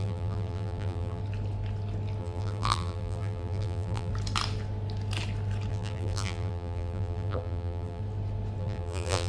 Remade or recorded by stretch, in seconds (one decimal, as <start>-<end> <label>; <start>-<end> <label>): 0.0-1.2 remade; 1.2-2.2 recorded; 2.2-4.1 remade; 4.1-5.7 recorded; 5.7-8.0 remade; 8.0-8.6 recorded; 8.6-9.3 remade